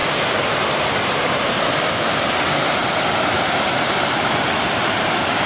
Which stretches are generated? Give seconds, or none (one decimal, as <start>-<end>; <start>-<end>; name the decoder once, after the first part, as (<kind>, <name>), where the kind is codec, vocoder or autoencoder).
none

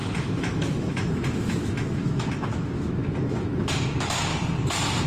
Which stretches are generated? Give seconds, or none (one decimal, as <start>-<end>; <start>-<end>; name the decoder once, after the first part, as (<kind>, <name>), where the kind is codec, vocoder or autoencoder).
0.0-4.3 (autoencoder, DAC-VAE)

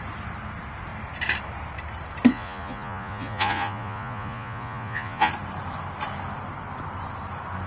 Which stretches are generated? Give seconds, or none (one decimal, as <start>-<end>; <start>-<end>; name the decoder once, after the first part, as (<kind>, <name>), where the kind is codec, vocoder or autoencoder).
2.3-5.3 (vocoder, Vocos)

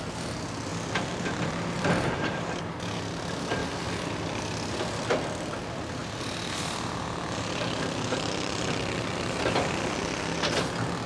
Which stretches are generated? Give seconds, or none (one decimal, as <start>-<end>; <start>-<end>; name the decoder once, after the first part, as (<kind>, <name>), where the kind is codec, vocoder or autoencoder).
0.7-2.6 (vocoder, BigVGAN v2); 6.0-9.7

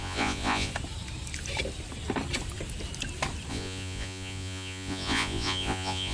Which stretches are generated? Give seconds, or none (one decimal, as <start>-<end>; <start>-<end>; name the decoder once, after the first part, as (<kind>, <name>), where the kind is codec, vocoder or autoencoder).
0.0-0.7 (vocoder, Vocos); 3.5-6.1

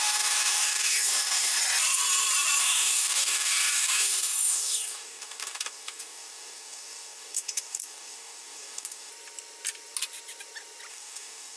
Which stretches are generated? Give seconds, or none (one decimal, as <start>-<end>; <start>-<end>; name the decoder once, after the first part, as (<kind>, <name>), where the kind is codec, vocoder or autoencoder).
0.0-1.6 (codec, DAC); 2.6-9.1; 10.9-11.6

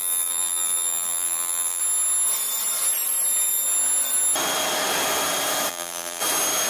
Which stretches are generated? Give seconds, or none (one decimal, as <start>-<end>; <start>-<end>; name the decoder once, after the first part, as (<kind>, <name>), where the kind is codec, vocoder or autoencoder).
0.0-1.8 (vocoder, BigVGAN v2); 5.7-6.2